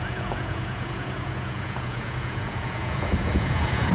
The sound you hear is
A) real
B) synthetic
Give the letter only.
B